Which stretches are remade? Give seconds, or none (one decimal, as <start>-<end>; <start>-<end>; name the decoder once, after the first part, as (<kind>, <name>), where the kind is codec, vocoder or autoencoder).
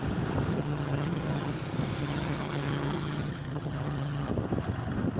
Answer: 0.5-1.5 (vocoder, HiFi-GAN); 2.0-4.3